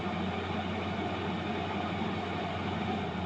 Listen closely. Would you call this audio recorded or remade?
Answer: recorded